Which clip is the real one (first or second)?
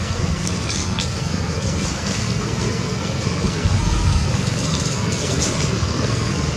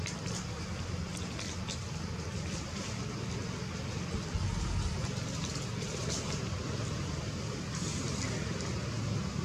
second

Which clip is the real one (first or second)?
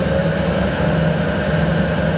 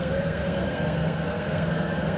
first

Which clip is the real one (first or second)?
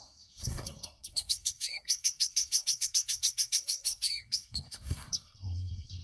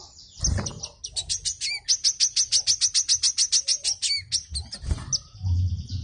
second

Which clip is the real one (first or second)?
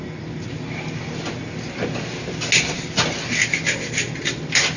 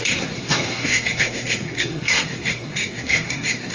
first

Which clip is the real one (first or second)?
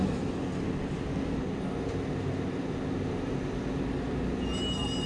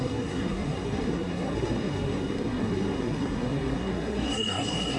first